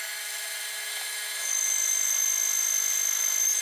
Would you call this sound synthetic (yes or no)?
no